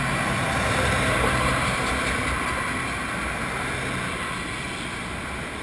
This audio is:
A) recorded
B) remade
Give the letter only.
A